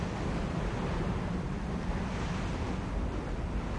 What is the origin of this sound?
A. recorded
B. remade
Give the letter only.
A